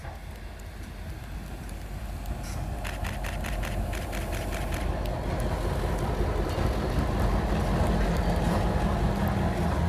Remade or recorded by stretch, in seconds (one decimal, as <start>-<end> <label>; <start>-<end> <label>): 0.0-9.9 recorded